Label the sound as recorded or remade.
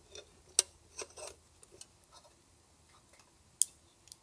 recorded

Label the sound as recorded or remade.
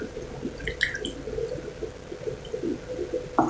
recorded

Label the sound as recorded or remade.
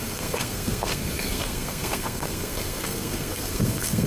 remade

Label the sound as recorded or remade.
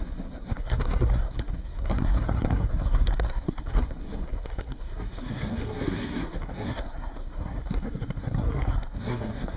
remade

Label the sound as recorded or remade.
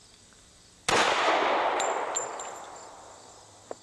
recorded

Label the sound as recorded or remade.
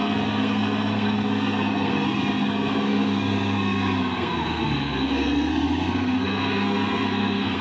remade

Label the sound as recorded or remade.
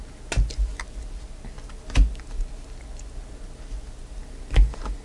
recorded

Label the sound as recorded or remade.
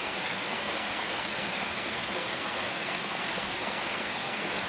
remade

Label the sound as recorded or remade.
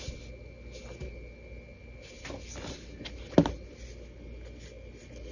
recorded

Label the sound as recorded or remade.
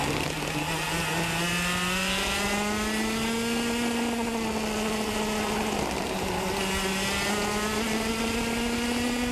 recorded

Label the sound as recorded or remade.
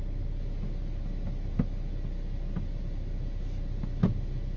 recorded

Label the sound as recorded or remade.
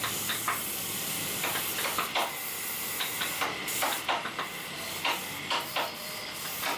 recorded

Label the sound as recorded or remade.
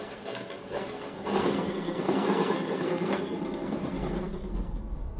remade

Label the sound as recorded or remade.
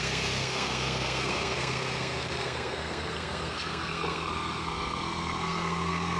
remade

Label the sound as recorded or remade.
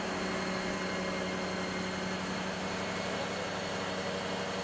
recorded